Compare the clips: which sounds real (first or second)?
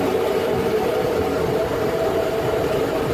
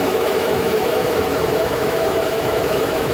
first